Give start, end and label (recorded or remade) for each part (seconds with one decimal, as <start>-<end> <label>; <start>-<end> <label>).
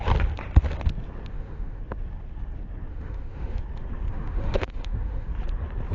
0.0-1.3 recorded; 1.3-1.8 remade; 1.8-2.9 recorded; 2.9-3.6 remade; 3.6-4.1 recorded; 4.1-5.3 remade; 5.3-5.9 recorded